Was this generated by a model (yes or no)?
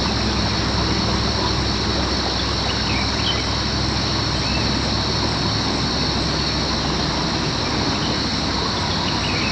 no